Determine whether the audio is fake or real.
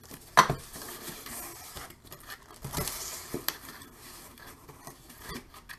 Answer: real